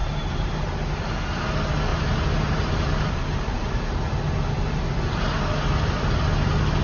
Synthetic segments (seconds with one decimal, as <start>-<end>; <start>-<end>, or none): 0.0-1.1; 1.9-4.1